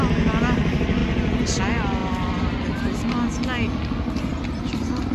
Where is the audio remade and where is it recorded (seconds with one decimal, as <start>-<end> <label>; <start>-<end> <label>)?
0.0-5.1 recorded